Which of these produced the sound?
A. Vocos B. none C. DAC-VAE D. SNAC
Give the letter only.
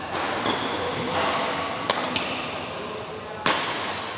B